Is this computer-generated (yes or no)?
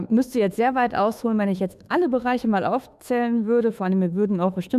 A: yes